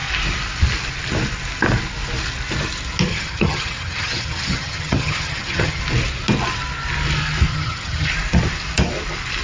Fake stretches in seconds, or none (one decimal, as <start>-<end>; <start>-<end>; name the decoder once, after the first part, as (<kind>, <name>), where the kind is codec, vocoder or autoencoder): 3.1-5.8 (vocoder, HiFi-GAN); 7.5-8.1